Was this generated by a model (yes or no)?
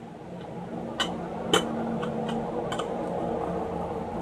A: no